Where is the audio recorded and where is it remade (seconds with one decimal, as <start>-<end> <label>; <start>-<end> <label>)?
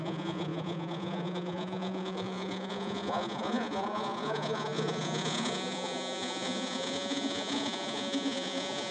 0.0-8.9 remade